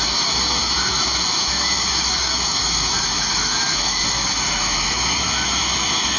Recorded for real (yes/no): no